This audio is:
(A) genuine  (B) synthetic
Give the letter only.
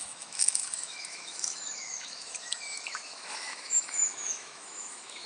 B